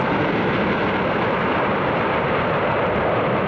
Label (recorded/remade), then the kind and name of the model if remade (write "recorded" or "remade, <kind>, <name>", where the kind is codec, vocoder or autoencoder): recorded